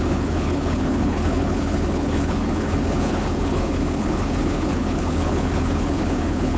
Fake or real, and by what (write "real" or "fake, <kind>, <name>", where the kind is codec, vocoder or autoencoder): fake, codec, HILCodec